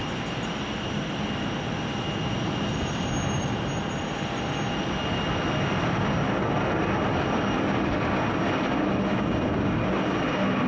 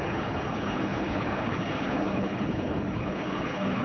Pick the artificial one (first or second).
second